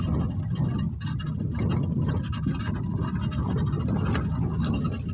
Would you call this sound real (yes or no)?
yes